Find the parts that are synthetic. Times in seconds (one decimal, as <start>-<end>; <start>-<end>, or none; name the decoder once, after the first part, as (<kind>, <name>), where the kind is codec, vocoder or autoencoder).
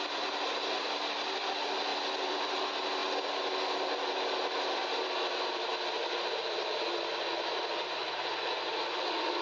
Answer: 1.9-2.6 (vocoder, BigVGAN v2)